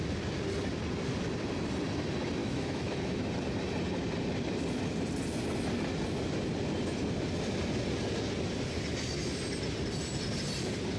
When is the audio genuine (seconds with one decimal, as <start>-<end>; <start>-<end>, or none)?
0.0-2.4; 3.2-11.0

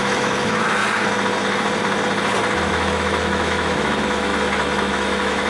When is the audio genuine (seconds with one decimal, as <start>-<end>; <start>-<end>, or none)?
0.8-2.7; 4.3-4.9

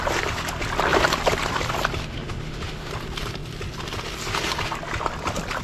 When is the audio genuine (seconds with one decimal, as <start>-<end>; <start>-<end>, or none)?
0.0-2.0; 2.9-5.6

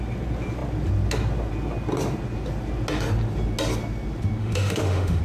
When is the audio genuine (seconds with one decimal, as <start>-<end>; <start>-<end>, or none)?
0.0-4.4

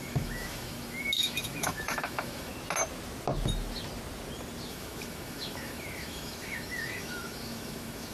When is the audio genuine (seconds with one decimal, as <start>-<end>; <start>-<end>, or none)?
2.5-4.7